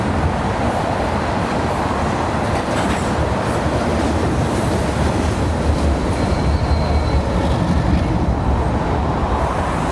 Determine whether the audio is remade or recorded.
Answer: remade